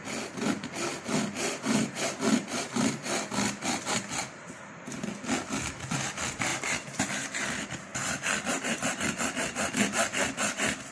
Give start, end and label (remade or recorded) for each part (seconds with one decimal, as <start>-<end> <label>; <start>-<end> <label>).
0.0-0.9 recorded; 0.9-3.8 remade; 3.8-6.5 recorded; 6.5-7.5 remade; 7.5-7.9 recorded; 7.9-9.7 remade; 9.7-10.9 recorded